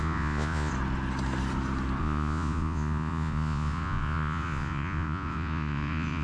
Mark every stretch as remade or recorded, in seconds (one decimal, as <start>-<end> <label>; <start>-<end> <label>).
0.0-0.7 remade; 0.7-2.0 recorded; 2.0-6.2 remade